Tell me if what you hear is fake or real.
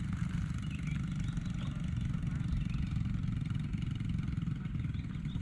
real